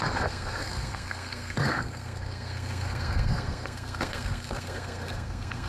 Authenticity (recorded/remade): remade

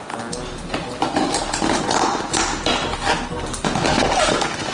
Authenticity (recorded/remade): recorded